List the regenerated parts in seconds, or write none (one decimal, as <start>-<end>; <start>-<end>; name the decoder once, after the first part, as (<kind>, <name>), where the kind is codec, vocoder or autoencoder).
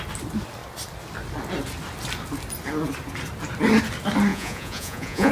4.3-5.3 (vocoder, Vocos)